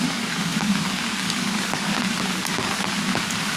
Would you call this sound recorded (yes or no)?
no